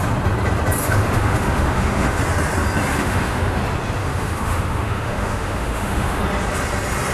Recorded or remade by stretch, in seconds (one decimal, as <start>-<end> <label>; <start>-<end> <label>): 0.0-0.8 recorded; 0.8-2.2 remade; 2.2-2.9 recorded; 2.9-3.6 remade; 3.6-4.0 recorded; 4.0-6.2 remade; 6.2-7.1 recorded